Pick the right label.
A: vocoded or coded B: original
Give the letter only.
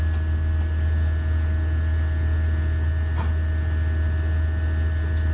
B